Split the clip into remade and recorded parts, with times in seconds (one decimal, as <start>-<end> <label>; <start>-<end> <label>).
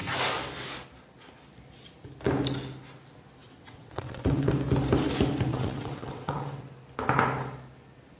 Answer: 0.0-3.4 recorded; 3.4-4.5 remade; 4.5-5.5 recorded; 5.5-6.6 remade; 6.6-8.2 recorded